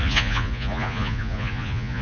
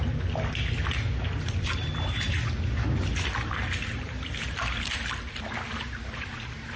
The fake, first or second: first